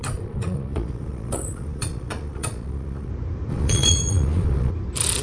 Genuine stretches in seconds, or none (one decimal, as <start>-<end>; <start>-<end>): 3.1-3.5; 4.7-5.2